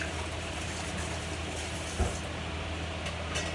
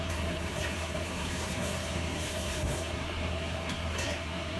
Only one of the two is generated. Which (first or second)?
second